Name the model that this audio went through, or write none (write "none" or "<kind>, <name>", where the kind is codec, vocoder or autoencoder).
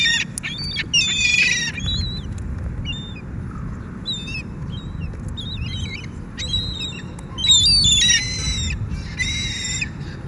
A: none